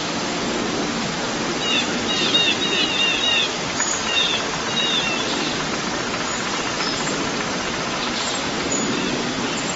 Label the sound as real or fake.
real